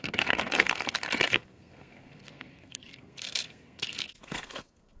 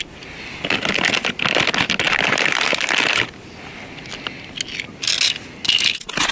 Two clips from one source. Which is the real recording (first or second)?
second